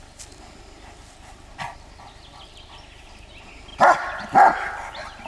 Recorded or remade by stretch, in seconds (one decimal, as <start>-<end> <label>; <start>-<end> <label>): 0.0-5.3 recorded